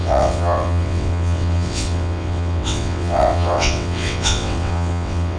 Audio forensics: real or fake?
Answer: fake